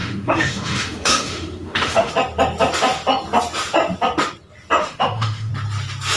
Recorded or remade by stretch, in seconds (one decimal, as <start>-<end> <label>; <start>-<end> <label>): 0.0-2.1 remade; 2.1-4.8 recorded; 4.8-5.5 remade; 5.5-6.2 recorded